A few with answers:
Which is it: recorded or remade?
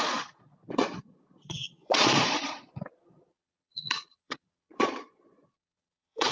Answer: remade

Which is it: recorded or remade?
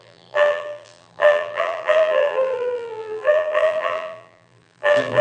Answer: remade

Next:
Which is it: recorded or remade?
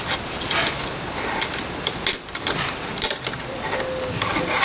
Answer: recorded